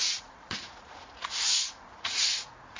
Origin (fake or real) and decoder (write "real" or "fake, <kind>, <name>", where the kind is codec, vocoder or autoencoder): fake, vocoder, Vocos